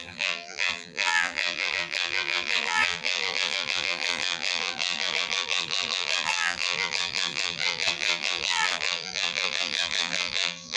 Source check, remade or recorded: remade